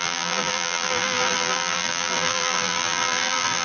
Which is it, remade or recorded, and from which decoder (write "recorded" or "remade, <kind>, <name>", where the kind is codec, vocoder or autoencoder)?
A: remade, vocoder, BigVGAN v2